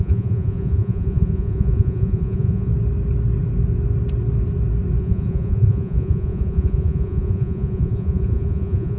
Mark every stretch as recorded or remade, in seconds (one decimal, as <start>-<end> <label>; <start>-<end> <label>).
0.0-2.7 remade; 2.7-5.0 recorded; 5.0-9.0 remade

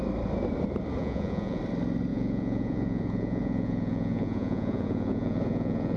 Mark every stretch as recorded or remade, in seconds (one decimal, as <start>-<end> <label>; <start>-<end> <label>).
0.0-1.0 recorded; 1.0-1.6 remade; 1.6-2.1 recorded; 2.1-6.0 remade

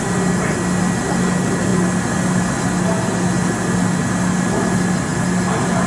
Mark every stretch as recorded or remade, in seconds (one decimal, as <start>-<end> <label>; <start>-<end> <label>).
0.0-5.9 recorded

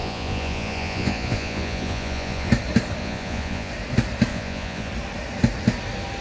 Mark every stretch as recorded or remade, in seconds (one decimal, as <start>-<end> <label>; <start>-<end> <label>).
0.0-2.5 remade; 2.5-3.0 recorded; 3.0-3.7 remade; 3.7-4.3 recorded; 4.3-4.9 remade; 4.9-6.2 recorded